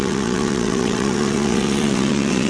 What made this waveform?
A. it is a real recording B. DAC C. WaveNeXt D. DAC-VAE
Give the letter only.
C